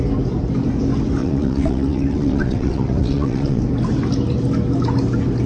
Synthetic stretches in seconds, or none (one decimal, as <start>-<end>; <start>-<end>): 1.2-3.6